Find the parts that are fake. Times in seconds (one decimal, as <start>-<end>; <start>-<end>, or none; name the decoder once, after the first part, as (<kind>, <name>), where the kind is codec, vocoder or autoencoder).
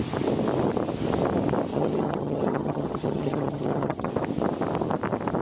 1.7-4.1 (vocoder, HiFi-GAN)